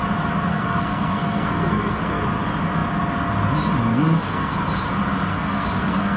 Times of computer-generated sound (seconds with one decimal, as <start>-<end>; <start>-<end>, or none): 0.5-2.2; 3.9-4.6; 5.3-6.2